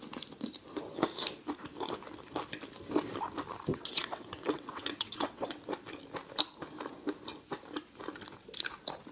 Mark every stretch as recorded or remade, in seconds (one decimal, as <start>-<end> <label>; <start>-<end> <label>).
0.0-3.7 recorded; 3.7-5.6 remade; 5.6-9.1 recorded